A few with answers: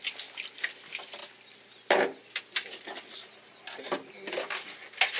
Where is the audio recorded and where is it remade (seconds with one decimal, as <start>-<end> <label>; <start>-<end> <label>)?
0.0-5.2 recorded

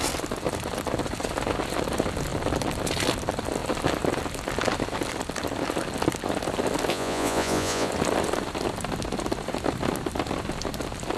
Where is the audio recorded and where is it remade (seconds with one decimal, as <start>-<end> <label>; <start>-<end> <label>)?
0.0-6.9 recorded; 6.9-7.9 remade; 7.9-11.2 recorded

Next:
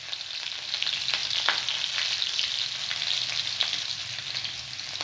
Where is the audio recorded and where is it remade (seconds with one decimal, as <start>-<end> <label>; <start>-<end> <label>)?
0.0-5.0 recorded